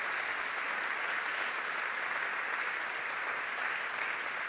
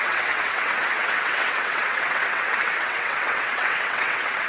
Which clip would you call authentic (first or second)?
first